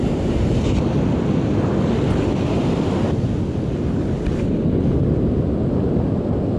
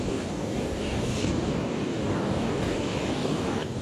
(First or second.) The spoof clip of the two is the second